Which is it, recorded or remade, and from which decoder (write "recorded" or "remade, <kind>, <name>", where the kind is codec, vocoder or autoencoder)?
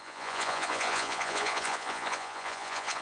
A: remade, vocoder, Vocos